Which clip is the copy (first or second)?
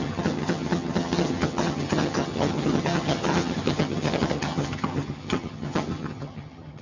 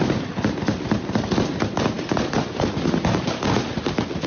first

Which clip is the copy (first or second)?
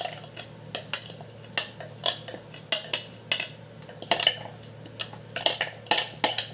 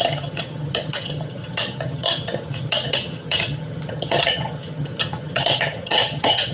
second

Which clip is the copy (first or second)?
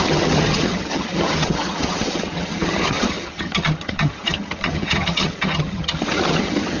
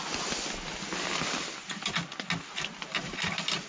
first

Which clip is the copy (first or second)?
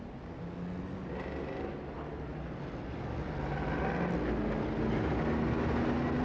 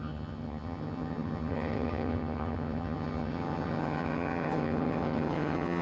second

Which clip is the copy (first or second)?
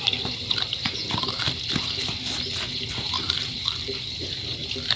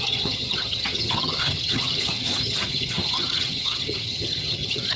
second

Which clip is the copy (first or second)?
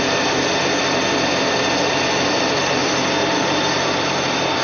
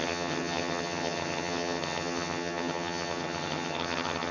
second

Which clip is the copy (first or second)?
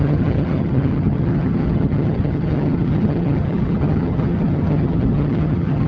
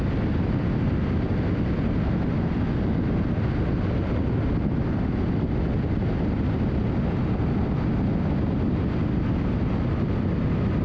first